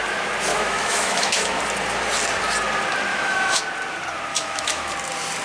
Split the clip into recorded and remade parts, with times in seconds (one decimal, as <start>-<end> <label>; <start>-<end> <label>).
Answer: 0.0-0.5 recorded; 0.5-1.6 remade; 1.6-3.1 recorded; 3.1-3.6 remade; 3.6-4.3 recorded; 4.3-4.9 remade; 4.9-5.4 recorded